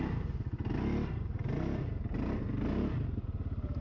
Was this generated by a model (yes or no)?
no